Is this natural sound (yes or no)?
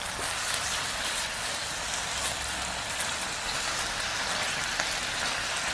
yes